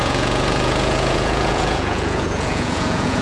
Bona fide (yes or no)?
no